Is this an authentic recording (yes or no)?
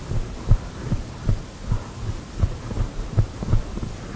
yes